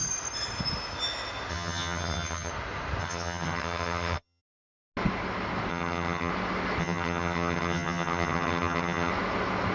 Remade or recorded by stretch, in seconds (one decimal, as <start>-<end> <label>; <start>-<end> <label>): 0.0-1.5 recorded; 1.5-2.5 remade; 2.5-3.0 recorded; 3.0-4.4 remade; 4.4-5.7 recorded; 5.7-6.3 remade; 6.3-6.8 recorded; 6.8-9.1 remade; 9.1-9.7 recorded